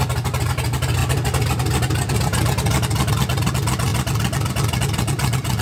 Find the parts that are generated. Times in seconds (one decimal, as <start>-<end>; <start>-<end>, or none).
none